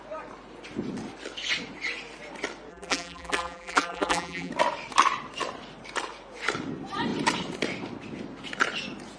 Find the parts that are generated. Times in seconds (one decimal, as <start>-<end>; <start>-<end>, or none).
2.7-4.5